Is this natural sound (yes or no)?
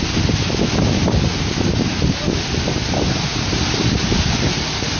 yes